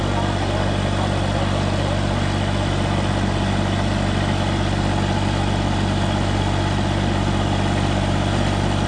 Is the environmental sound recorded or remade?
recorded